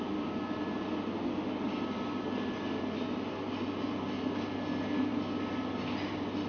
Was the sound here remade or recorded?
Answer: recorded